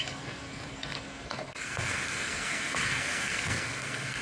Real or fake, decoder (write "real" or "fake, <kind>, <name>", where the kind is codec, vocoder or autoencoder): fake, codec, SNAC